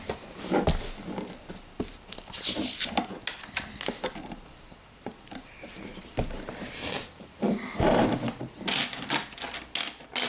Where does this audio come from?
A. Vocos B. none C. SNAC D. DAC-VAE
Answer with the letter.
B